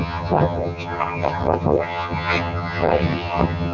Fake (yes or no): yes